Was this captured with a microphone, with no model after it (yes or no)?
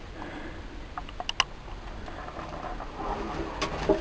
yes